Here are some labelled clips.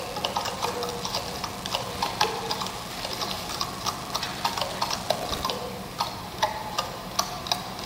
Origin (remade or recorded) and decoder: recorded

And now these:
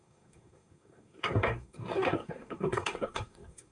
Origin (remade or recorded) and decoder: remade, codec, SNAC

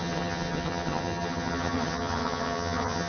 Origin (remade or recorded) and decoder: remade, vocoder, HiFi-GAN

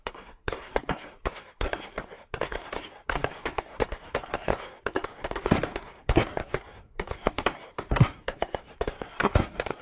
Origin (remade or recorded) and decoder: remade, codec, SNAC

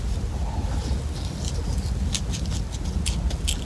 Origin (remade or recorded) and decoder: recorded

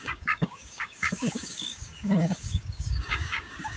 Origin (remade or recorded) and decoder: remade, codec, DAC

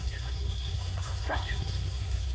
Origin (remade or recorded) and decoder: remade, codec, SNAC